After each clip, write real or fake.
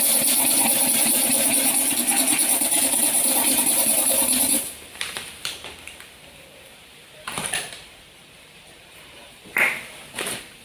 fake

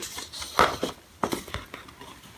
fake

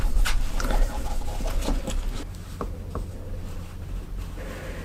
real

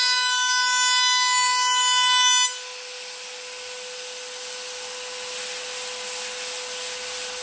real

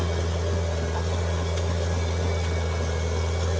real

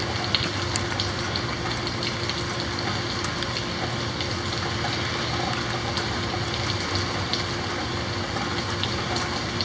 real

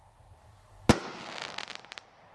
real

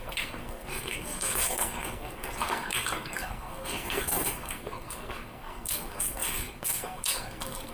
fake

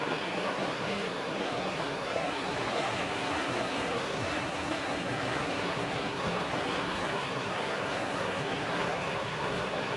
fake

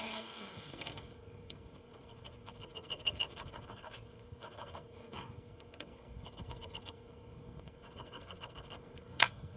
fake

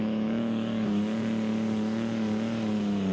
fake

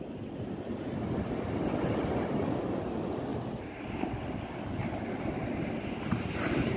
real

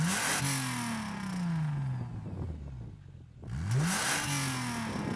real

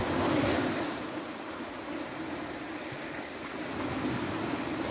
real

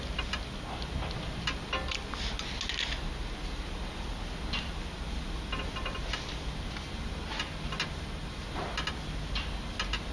real